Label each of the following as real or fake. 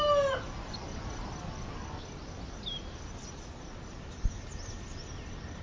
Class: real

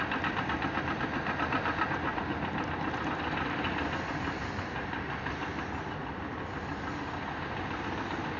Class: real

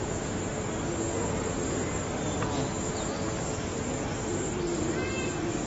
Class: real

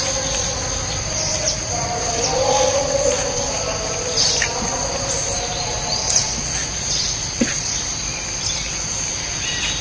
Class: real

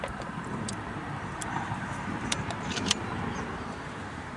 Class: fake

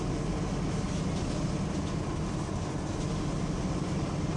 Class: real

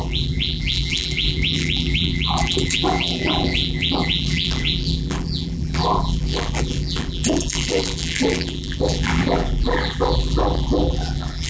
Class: fake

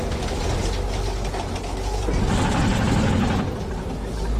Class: real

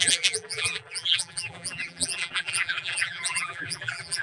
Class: fake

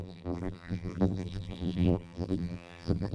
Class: fake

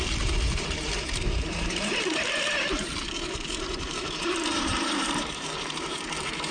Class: fake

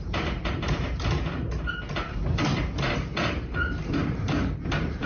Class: fake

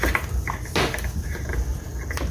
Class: real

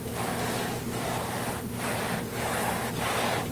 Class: real